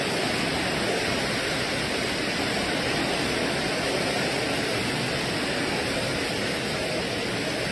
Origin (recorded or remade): recorded